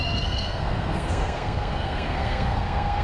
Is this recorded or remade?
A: remade